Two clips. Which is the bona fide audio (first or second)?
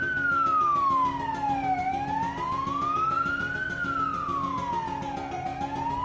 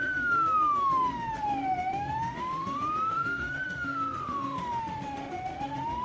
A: first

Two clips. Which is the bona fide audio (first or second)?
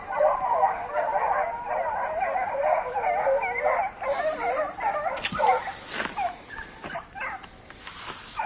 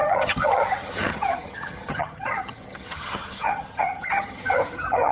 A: first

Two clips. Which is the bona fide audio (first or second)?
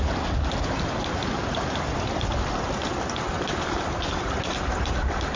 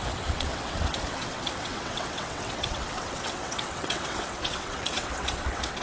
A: first